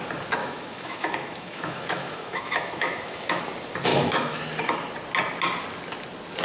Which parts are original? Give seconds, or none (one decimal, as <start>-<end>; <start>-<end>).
0.0-0.4; 3.4-3.9; 4.4-6.4